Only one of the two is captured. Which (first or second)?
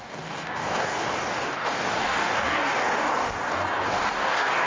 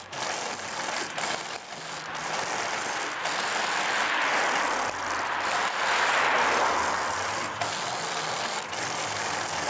second